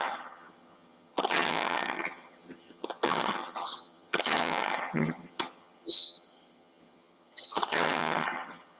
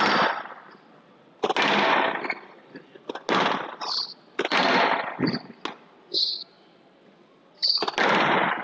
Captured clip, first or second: second